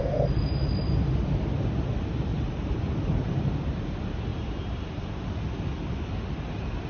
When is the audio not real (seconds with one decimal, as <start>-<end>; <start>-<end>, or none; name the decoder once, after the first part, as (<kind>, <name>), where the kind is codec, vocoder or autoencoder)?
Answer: 2.3-3.4 (vocoder, BigVGAN v2); 4.3-5.4